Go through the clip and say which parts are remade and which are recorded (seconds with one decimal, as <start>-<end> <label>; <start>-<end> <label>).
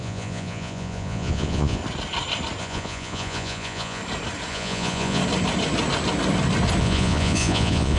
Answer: 0.0-1.8 remade; 1.8-2.6 recorded; 2.6-4.0 remade; 4.0-4.5 recorded; 4.5-5.2 remade; 5.2-6.8 recorded; 6.8-8.0 remade